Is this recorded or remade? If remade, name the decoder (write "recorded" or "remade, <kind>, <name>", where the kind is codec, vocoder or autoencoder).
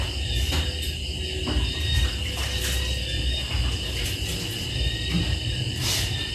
recorded